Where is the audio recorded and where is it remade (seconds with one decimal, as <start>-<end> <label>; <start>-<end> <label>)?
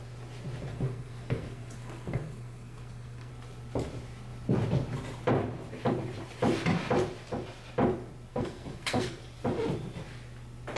0.0-0.7 recorded; 0.7-3.3 remade; 3.3-8.3 recorded; 8.3-9.2 remade; 9.2-10.8 recorded